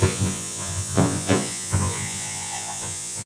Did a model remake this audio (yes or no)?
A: yes